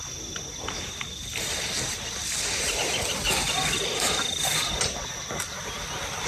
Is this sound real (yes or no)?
yes